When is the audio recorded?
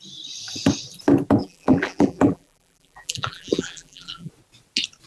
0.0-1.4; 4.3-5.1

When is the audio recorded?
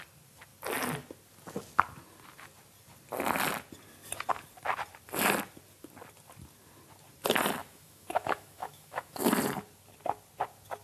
0.0-7.6; 9.3-10.8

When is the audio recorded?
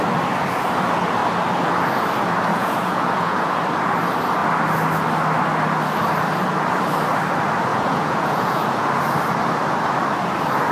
0.0-2.5; 3.6-7.7; 8.9-10.7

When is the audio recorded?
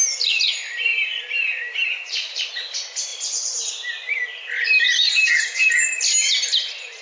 0.0-0.9; 2.5-3.1; 3.7-5.0; 6.0-7.0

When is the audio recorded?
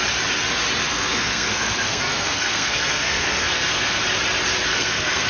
0.0-0.8; 4.0-4.7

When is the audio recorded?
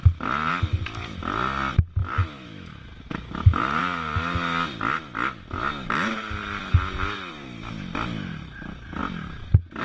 0.0-2.0; 3.8-9.8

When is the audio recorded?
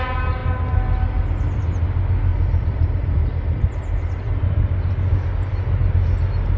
0.0-2.3; 4.4-6.6